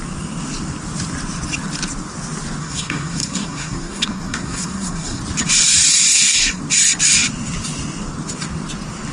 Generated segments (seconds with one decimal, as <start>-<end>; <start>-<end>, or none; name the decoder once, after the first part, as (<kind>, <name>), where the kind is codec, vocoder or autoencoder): 2.6-5.2 (codec, SNAC); 6.1-6.6